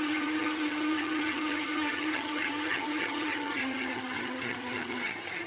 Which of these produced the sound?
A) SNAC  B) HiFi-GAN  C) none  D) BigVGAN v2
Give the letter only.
B